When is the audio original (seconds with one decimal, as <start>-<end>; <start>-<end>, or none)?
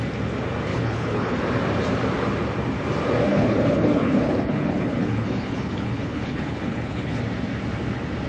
0.0-0.7; 1.4-3.3; 7.2-8.3